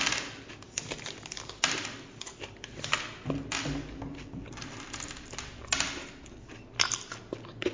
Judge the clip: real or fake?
real